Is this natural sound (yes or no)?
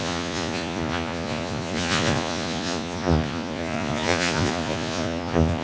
no